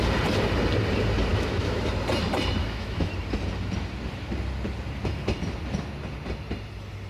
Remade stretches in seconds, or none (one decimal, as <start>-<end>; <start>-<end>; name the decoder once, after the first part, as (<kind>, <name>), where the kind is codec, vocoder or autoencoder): 1.3-1.8 (autoencoder, DAC-VAE); 2.6-3.1